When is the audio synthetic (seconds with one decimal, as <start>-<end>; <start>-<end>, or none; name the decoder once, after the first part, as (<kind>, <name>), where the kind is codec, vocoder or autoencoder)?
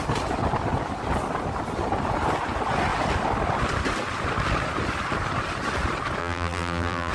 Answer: 6.2-7.1 (vocoder, BigVGAN v2)